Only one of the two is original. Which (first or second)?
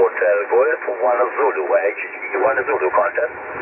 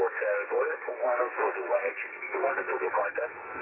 first